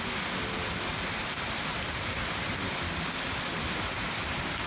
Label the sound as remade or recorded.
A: remade